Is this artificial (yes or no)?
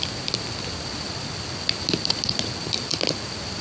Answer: no